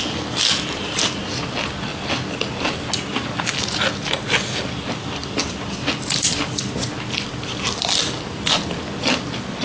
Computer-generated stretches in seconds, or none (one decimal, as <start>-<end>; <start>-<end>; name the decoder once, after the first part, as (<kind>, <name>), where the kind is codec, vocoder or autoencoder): none